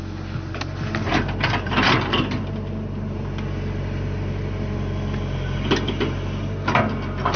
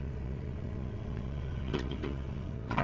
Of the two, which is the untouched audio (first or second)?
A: first